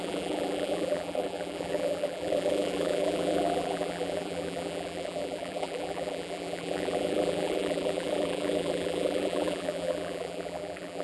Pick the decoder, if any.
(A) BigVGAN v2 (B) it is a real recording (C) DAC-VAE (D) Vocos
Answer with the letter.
A